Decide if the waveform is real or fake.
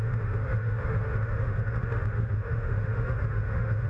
fake